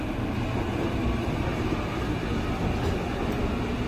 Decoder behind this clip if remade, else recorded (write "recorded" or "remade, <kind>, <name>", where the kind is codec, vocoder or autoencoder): recorded